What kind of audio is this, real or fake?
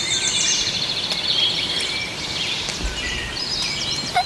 fake